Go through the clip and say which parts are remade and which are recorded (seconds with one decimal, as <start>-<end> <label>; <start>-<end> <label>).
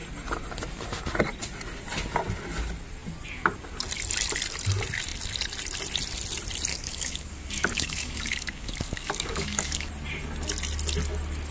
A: 0.0-6.7 recorded; 6.7-9.9 remade; 9.9-11.5 recorded